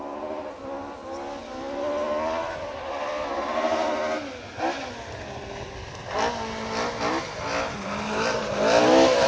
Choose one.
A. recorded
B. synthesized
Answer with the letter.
A